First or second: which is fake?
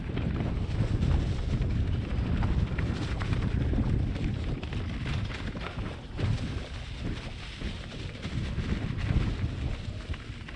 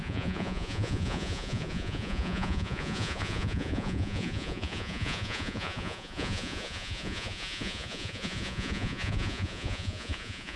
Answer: second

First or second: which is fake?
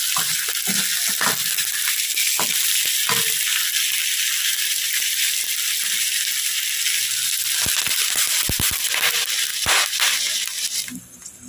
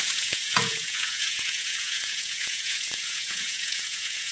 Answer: second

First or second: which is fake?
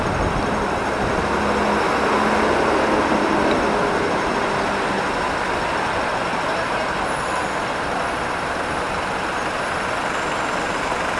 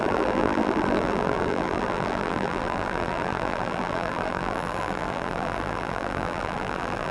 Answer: second